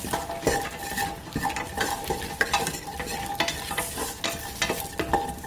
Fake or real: real